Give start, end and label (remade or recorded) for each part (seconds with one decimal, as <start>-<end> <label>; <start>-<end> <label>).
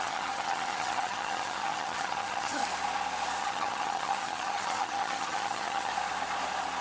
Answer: 0.0-2.6 remade; 2.6-3.4 recorded; 3.4-5.9 remade; 5.9-6.8 recorded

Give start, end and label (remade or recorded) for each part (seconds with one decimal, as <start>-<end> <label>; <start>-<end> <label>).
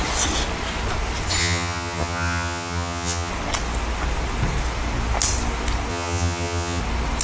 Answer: 0.0-1.4 recorded; 1.4-3.3 remade; 3.3-5.9 recorded; 5.9-6.8 remade; 6.8-7.2 recorded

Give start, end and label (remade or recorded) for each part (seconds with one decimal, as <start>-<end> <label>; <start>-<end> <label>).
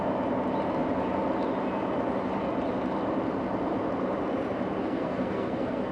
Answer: 0.0-4.8 recorded; 4.8-5.9 remade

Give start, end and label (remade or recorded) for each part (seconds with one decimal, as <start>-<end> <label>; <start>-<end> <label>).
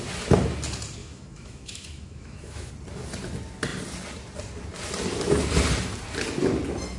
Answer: 0.0-1.0 recorded; 1.0-2.7 remade; 2.7-7.0 recorded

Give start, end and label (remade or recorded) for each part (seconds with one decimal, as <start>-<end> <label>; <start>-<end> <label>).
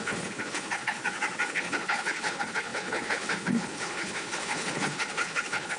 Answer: 0.0-1.0 remade; 1.0-1.5 recorded; 1.5-5.8 remade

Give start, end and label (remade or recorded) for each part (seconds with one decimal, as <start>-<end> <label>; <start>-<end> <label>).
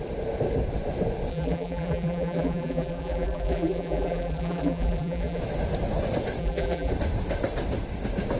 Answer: 0.0-1.3 recorded; 1.3-5.4 remade; 5.4-6.4 recorded; 6.4-6.9 remade; 6.9-8.4 recorded